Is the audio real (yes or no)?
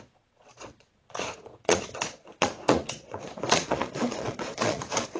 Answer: no